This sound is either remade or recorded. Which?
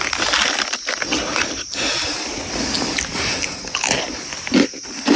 recorded